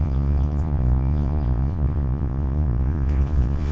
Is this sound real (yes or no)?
no